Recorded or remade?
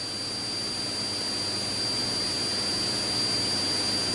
recorded